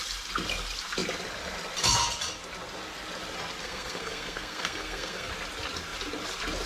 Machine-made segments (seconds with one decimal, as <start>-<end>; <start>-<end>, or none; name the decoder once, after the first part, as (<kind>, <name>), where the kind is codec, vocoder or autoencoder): 3.6-5.3 (codec, SNAC)